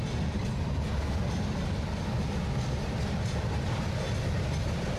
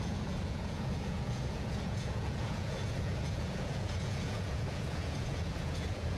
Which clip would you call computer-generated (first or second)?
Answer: second